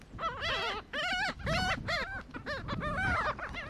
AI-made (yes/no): no